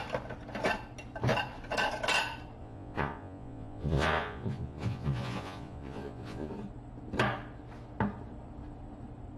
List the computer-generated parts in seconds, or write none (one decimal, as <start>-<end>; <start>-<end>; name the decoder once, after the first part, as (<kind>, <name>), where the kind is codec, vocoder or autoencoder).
2.6-6.5 (vocoder, Vocos)